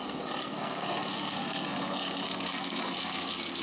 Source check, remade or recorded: remade